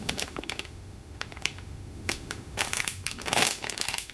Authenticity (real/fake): fake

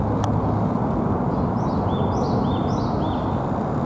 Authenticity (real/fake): real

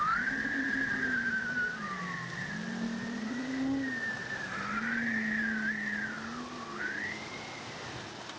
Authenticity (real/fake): real